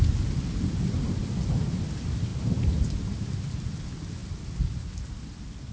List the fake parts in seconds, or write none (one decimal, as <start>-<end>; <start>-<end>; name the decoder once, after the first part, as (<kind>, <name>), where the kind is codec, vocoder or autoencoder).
2.3-3.3 (vocoder, BigVGAN v2)